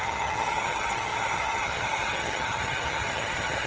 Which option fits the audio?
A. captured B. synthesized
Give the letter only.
B